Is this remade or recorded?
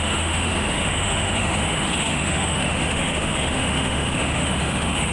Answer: remade